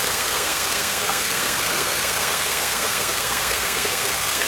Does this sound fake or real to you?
fake